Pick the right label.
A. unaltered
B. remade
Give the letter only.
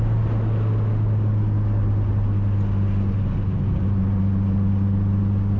A